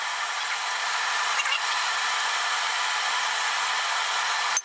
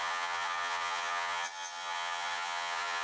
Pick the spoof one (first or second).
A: second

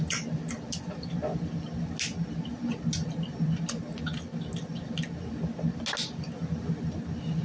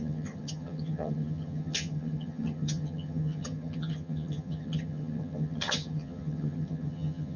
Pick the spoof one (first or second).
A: second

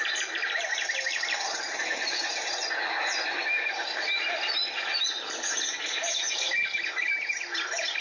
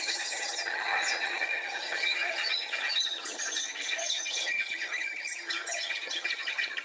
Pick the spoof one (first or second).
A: second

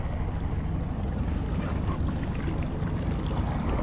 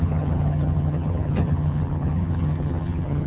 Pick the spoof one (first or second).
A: second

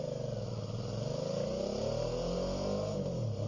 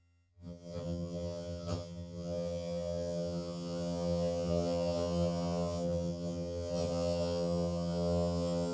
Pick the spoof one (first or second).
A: second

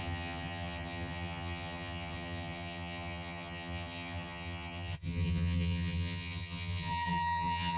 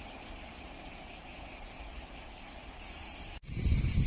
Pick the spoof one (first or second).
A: first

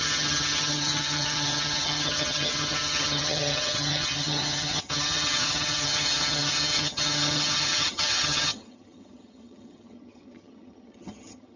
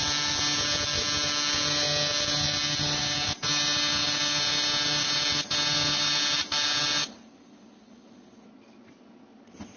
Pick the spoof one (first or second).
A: first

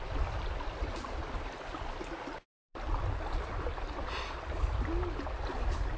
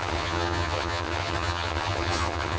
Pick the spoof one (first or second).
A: second